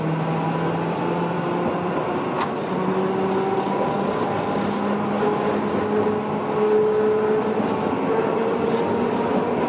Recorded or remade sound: recorded